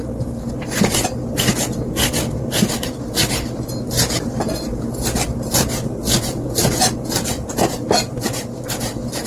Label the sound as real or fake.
real